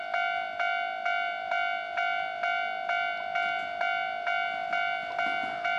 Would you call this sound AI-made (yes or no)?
no